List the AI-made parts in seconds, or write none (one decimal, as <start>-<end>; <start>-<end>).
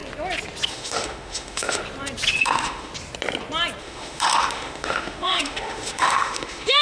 0.7-1.8; 2.4-2.9; 3.8-6.8